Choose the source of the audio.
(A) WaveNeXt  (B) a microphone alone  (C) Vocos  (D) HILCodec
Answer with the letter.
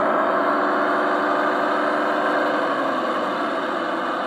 B